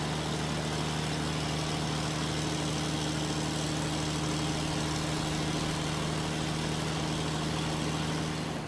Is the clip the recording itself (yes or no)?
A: yes